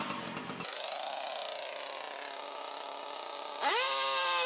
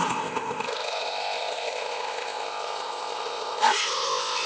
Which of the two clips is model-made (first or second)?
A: second